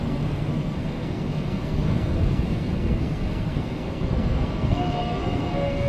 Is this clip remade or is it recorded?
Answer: remade